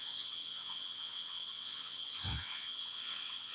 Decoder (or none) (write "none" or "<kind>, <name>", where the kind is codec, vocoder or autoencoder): vocoder, WaveNeXt